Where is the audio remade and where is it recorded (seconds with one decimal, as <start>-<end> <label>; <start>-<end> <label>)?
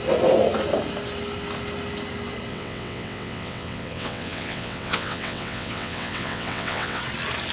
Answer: 0.0-2.5 recorded; 2.5-7.0 remade; 7.0-7.5 recorded